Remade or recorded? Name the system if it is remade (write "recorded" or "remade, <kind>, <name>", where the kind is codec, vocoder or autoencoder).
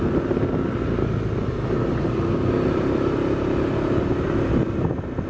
recorded